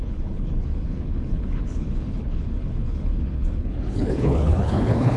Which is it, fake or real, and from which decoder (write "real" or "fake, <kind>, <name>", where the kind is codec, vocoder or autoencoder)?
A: fake, codec, HILCodec